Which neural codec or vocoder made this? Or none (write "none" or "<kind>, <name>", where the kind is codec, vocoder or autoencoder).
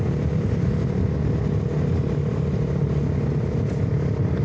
none